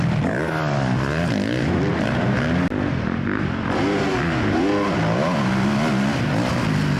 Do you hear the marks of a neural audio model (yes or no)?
no